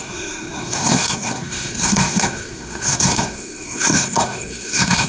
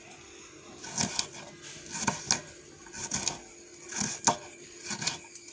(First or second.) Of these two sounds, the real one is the second